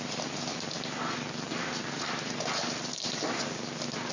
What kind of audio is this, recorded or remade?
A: recorded